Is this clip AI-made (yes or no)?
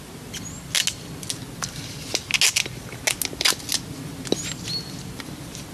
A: no